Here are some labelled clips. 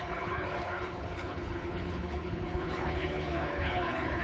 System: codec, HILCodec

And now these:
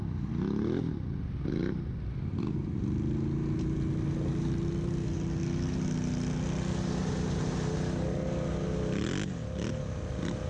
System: none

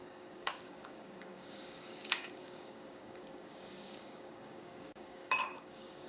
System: codec, DAC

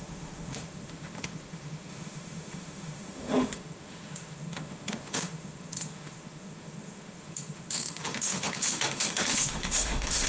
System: autoencoder, DAC-VAE